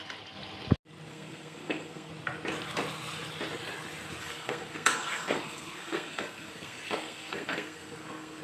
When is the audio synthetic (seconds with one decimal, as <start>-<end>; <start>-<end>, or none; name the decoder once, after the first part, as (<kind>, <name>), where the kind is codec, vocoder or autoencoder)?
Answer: 1.1-2.1 (codec, SNAC); 4.2-8.4